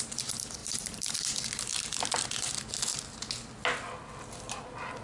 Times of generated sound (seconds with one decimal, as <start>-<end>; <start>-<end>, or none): 0.6-1.1